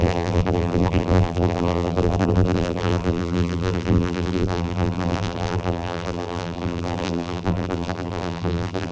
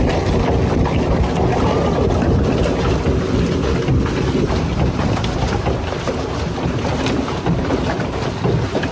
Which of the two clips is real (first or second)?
second